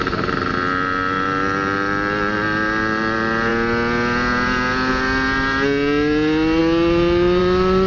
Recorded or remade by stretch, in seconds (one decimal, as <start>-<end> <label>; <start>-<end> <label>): 0.0-7.9 recorded